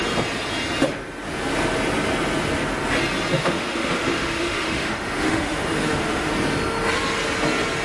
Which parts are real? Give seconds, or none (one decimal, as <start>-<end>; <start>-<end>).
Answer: 0.0-3.4; 6.3-7.8